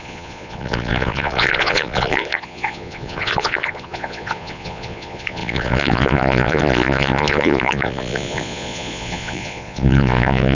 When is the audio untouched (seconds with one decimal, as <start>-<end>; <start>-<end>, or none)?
none